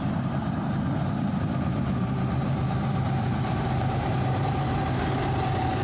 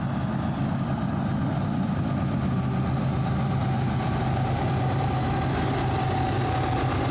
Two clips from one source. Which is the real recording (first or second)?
second